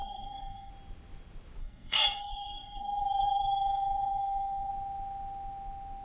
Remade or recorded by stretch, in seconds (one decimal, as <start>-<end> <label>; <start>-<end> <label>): 0.0-0.7 remade; 0.7-1.6 recorded; 1.6-4.7 remade; 4.7-6.0 recorded